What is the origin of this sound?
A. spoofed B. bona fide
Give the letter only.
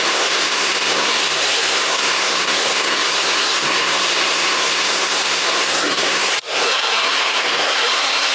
A